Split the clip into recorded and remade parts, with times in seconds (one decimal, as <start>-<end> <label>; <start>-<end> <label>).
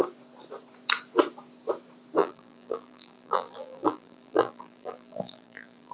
0.0-2.2 recorded; 2.2-5.9 remade